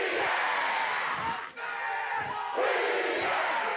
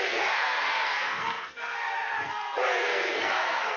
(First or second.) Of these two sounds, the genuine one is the first